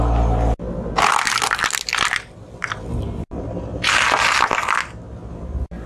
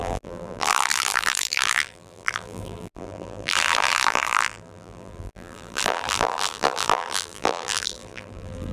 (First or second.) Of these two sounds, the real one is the first